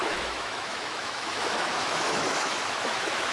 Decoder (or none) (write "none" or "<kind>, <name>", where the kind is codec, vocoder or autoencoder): autoencoder, DAC-VAE